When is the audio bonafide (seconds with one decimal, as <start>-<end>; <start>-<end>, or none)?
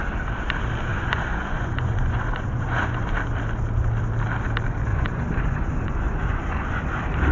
0.0-0.9; 3.0-4.9; 6.8-7.3